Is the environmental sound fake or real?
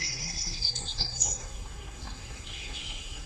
fake